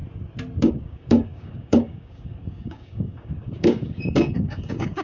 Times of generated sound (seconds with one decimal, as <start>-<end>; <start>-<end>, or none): 0.6-5.0